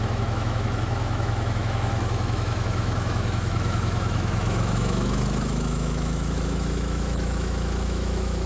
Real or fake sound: fake